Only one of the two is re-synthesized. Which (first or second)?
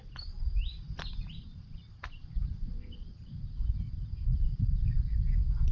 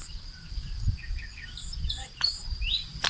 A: first